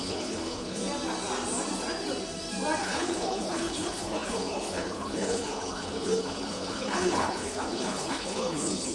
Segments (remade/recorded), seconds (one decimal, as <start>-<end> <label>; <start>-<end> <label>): 0.0-0.8 remade; 0.8-2.8 recorded; 2.8-8.9 remade